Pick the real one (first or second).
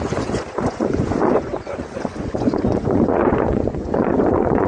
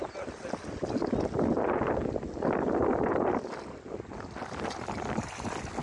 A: second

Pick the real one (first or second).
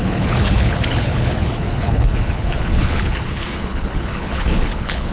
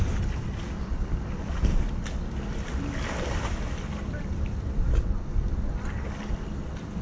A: second